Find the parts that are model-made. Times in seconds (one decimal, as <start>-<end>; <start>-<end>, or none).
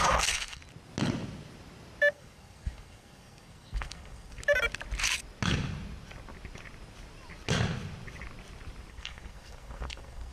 0.0-0.6; 2.1-4.4; 8.9-10.3